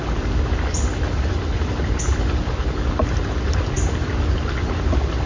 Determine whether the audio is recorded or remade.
recorded